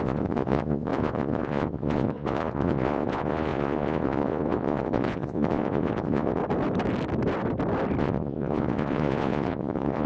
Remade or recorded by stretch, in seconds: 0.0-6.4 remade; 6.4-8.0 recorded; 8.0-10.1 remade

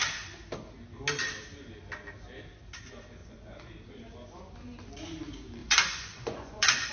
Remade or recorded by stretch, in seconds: 0.0-3.2 recorded; 3.2-3.7 remade; 3.7-5.6 recorded; 5.6-6.9 remade

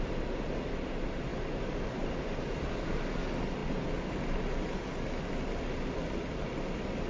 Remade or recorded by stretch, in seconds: 0.0-7.1 recorded

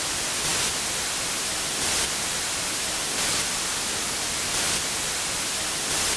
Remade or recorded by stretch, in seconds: 0.0-6.2 recorded

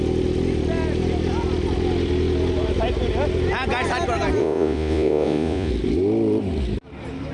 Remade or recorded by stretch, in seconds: 0.0-4.4 recorded; 4.4-5.7 remade; 5.7-7.3 recorded